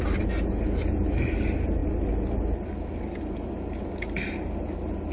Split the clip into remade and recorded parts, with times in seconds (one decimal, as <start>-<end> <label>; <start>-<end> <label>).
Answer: 0.0-5.1 recorded

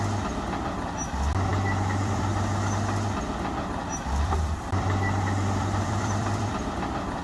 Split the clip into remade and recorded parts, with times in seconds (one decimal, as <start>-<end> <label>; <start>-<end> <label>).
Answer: 0.0-1.5 recorded; 1.5-2.3 remade; 2.3-3.8 recorded; 3.8-7.2 remade

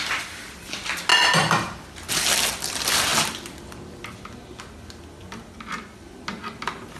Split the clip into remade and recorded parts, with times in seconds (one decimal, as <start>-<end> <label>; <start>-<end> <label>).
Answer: 0.0-7.0 recorded

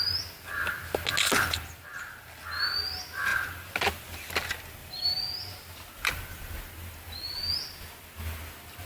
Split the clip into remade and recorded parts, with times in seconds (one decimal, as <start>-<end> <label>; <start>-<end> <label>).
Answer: 0.0-4.8 recorded; 4.8-6.1 remade; 6.1-8.9 recorded

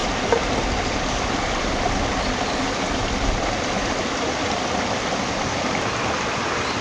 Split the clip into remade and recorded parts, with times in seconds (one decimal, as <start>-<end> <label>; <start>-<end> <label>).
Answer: 0.0-6.8 recorded

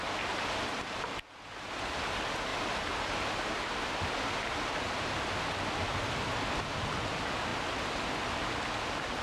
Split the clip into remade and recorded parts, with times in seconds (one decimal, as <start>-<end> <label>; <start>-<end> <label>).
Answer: 0.0-9.2 recorded

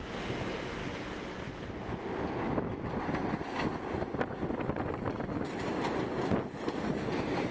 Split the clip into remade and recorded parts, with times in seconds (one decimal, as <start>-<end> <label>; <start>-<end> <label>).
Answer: 0.0-7.5 recorded

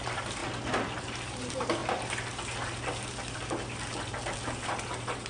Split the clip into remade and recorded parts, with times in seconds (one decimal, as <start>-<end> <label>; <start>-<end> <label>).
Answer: 0.0-0.4 remade; 0.4-1.0 recorded; 1.0-1.8 remade; 1.8-5.3 recorded